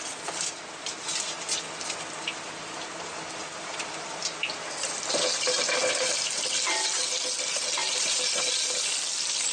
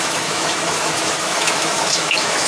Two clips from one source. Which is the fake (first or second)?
second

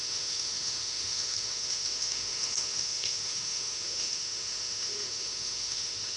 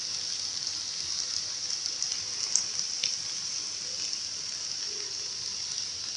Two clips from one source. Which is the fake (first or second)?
first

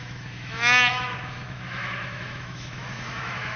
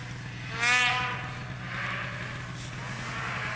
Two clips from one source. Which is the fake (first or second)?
first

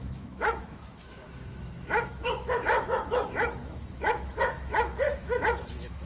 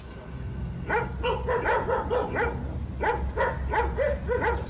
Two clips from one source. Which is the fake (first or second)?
first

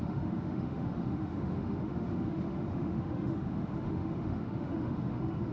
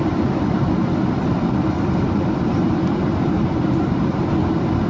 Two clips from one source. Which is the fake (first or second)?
first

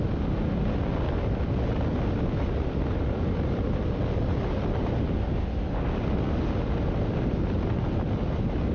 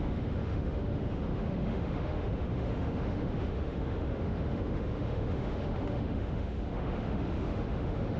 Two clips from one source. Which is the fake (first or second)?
second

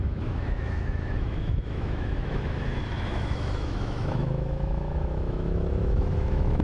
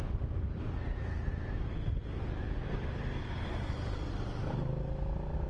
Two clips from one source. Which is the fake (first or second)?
first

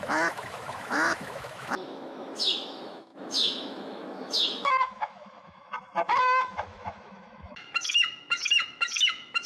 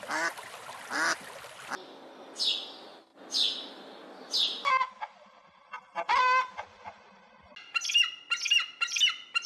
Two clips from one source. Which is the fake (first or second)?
first